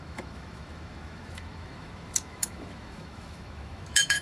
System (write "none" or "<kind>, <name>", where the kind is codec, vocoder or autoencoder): autoencoder, DAC-VAE